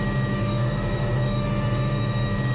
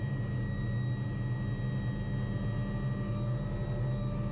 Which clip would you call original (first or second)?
second